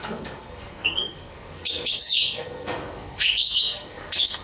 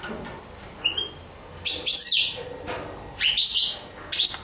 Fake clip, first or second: first